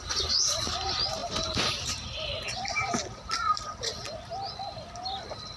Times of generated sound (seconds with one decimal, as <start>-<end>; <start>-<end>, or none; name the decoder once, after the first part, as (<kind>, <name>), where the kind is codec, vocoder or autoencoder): none